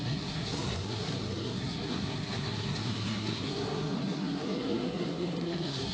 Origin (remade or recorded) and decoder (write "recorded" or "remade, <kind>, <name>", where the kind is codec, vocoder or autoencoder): remade, codec, SNAC